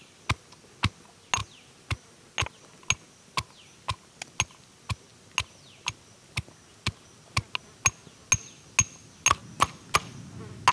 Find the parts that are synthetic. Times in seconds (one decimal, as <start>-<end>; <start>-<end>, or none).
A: none